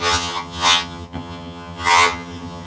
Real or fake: fake